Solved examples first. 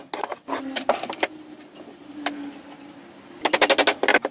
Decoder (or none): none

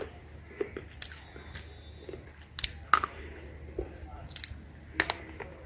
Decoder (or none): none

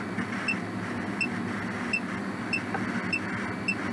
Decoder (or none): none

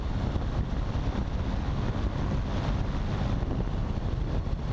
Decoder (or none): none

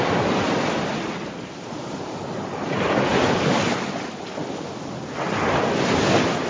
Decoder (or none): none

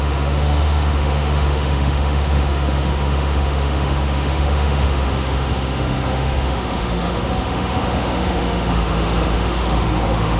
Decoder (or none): autoencoder, DAC-VAE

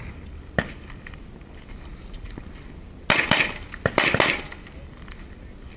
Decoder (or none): none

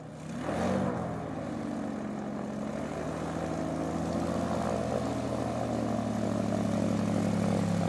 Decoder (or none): none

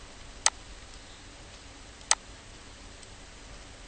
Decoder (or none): none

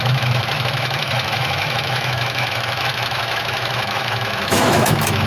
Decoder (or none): autoencoder, DAC-VAE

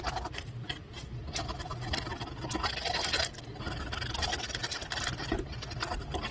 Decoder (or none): none